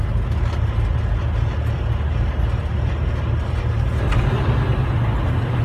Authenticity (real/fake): real